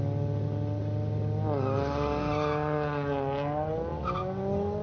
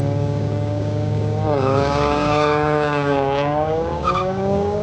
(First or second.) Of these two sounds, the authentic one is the first